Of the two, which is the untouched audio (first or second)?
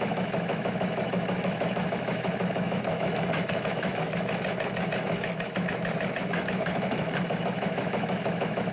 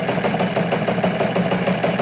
second